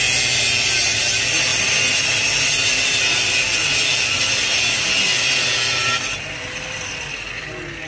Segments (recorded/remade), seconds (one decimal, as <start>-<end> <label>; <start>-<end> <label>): 0.0-7.9 recorded